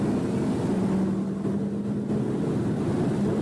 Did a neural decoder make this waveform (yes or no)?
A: no